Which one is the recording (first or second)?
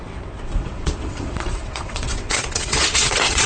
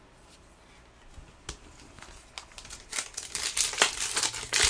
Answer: second